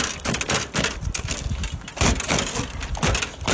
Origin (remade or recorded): recorded